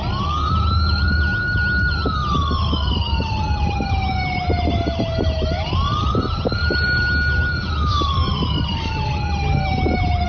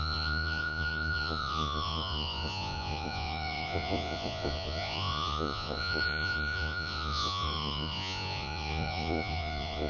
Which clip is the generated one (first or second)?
second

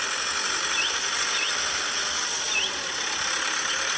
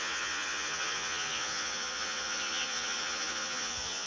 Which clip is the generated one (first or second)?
second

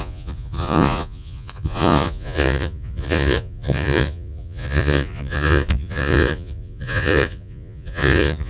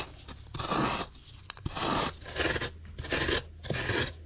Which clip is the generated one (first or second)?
first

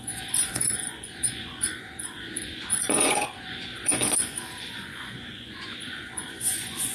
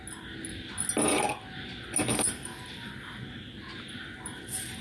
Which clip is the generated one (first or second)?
first